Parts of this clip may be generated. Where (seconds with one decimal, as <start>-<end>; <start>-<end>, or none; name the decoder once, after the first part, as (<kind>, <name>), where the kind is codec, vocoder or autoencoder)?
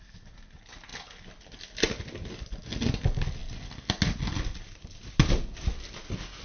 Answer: none